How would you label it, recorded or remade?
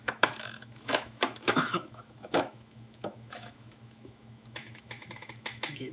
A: remade